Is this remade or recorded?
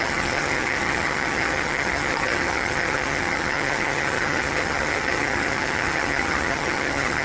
remade